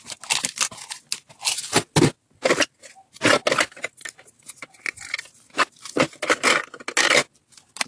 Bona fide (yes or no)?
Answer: yes